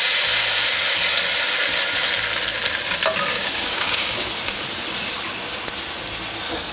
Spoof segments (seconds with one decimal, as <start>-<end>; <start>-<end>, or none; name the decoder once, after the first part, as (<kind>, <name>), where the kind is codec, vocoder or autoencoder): 3.3-4.1 (codec, DAC)